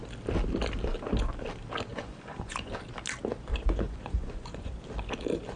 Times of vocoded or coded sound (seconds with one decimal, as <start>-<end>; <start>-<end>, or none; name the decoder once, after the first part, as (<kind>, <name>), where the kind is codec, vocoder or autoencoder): 1.9-2.7 (vocoder, Vocos); 3.5-4.7